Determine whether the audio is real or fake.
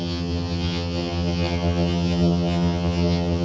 fake